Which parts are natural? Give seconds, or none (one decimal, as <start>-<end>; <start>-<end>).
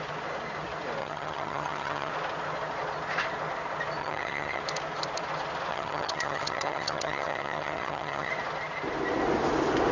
0.0-1.0; 2.1-4.0; 4.6-5.7; 8.3-9.9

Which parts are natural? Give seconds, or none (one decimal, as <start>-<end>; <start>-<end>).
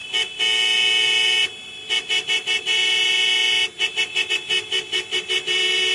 0.0-1.4; 1.8-4.3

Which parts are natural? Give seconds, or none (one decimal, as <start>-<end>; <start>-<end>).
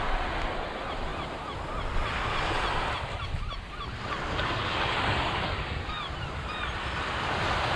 0.0-4.6; 6.0-7.8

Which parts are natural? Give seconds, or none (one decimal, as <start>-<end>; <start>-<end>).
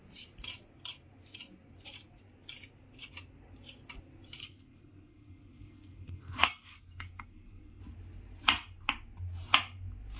0.0-4.4; 7.8-10.2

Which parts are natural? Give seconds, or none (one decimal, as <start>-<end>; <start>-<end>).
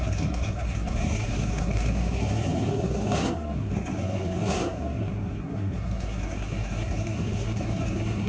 none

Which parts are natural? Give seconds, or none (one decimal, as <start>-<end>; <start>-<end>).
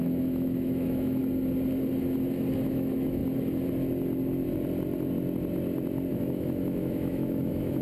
1.2-2.5; 3.2-6.1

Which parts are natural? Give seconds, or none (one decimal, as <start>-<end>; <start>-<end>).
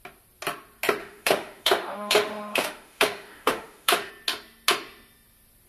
0.0-1.0; 4.1-5.7